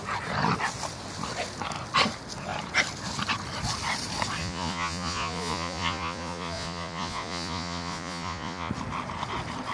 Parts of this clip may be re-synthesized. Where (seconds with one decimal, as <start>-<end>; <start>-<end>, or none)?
4.4-8.7